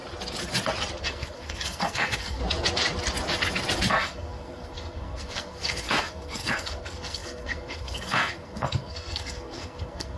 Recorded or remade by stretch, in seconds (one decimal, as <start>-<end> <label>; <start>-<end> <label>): 0.0-1.0 recorded; 1.0-2.4 remade; 2.4-3.9 recorded; 3.9-10.2 remade